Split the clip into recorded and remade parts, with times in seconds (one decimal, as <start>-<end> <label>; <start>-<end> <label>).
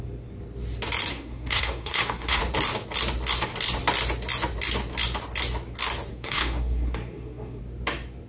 0.0-1.1 recorded; 1.1-2.4 remade; 2.4-6.1 recorded; 6.1-7.6 remade; 7.6-8.3 recorded